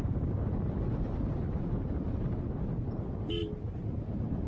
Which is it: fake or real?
real